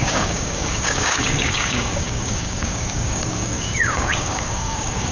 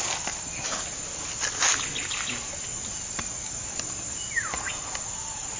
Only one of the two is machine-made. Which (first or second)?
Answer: first